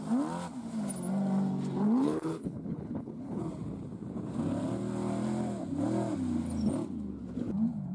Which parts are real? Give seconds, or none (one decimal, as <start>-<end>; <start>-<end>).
0.0-2.0; 3.4-7.9